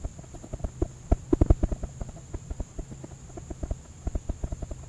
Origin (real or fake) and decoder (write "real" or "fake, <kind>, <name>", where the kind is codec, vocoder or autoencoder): real